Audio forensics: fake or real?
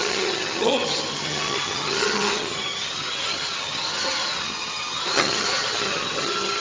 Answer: fake